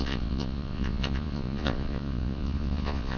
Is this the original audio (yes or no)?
no